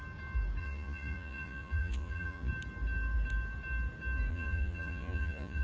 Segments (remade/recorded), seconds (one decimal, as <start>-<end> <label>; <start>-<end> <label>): 0.0-0.6 recorded; 0.6-2.5 remade; 2.5-4.3 recorded; 4.3-5.6 remade